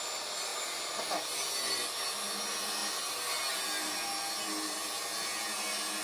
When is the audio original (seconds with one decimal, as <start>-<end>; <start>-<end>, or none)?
0.0-6.0